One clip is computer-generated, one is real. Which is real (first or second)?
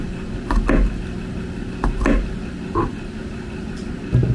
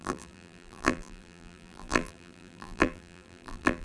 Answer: first